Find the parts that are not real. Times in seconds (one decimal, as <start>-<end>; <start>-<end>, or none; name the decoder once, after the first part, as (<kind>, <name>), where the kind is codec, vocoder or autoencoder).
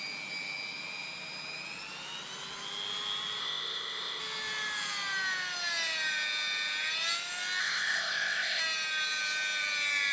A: 3.4-4.2 (codec, ZipCodec); 7.6-8.6